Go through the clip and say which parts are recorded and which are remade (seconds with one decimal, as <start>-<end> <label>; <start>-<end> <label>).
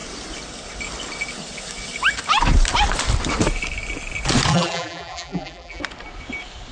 0.0-4.5 recorded; 4.5-5.8 remade; 5.8-6.7 recorded